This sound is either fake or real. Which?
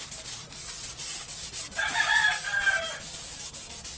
real